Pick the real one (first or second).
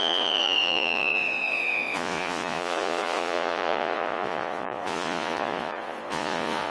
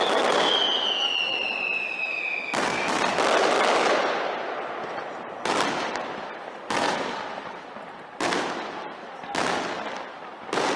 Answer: second